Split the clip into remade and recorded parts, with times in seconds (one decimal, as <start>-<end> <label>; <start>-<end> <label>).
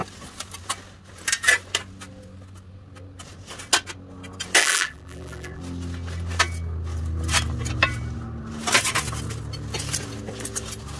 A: 0.0-4.6 recorded; 4.6-5.6 remade; 5.6-11.0 recorded